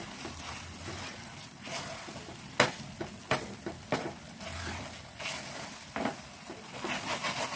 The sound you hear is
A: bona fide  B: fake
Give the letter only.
A